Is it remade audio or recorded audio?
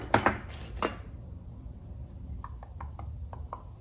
recorded